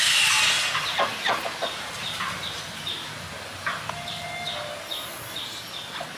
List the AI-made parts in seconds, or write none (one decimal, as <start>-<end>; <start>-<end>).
none